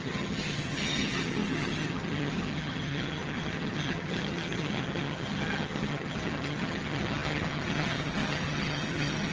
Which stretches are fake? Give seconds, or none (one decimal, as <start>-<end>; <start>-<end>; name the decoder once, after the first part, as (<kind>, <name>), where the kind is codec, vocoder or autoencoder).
0.0-9.3 (vocoder, HiFi-GAN)